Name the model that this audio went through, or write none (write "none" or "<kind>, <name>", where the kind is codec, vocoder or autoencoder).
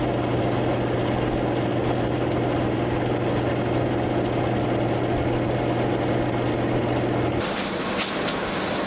none